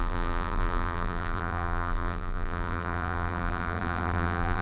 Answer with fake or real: fake